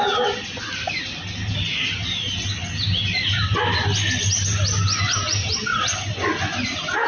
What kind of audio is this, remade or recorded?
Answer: recorded